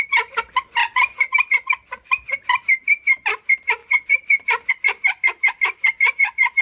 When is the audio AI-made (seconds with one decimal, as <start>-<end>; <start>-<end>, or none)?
0.8-1.5

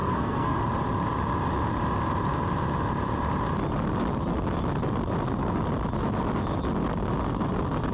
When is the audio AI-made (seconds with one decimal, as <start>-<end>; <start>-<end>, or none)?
0.0-0.6